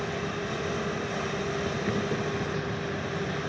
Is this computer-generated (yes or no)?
no